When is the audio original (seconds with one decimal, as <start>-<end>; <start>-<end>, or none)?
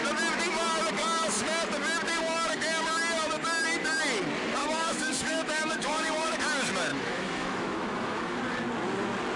0.0-4.6; 6.4-6.9; 8.4-9.4